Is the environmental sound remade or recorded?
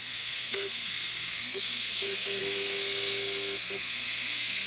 remade